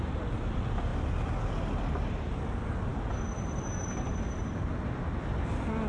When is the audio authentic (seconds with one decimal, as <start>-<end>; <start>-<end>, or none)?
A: 0.0-5.9